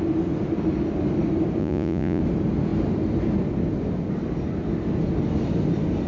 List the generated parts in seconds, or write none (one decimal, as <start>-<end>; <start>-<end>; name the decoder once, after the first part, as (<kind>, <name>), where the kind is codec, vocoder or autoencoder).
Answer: 1.6-2.2 (vocoder, Vocos)